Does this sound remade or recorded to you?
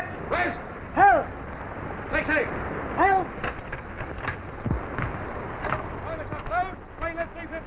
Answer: recorded